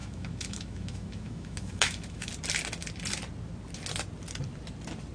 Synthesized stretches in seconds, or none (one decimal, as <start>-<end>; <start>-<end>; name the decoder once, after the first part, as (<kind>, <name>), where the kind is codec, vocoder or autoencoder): 0.0-2.3 (autoencoder, DAC-VAE)